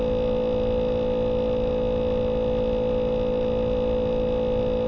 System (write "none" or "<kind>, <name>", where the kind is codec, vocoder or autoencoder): none